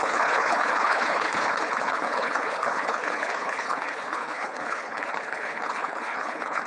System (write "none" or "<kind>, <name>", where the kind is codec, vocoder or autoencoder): codec, HILCodec